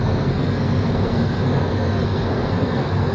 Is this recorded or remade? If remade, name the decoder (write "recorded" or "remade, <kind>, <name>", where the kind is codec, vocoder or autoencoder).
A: remade, codec, SNAC